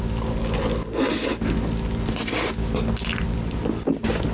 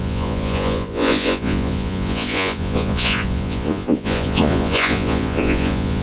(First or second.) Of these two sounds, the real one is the first